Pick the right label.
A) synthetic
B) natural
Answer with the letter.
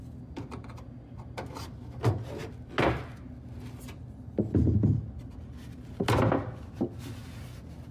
B